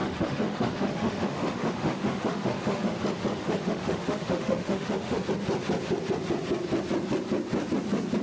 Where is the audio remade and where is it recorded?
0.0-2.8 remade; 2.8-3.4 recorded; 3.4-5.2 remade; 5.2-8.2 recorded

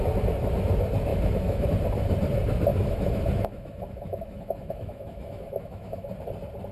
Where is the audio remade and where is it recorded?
0.0-1.1 recorded; 1.1-1.7 remade; 1.7-2.7 recorded; 2.7-6.1 remade; 6.1-6.7 recorded